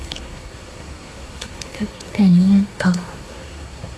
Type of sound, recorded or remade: remade